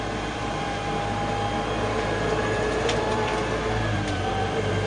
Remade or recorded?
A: remade